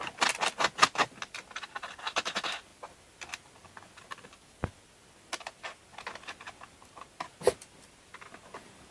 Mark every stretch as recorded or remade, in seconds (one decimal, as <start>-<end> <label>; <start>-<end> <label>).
0.0-2.7 recorded; 2.7-5.3 remade; 5.3-8.9 recorded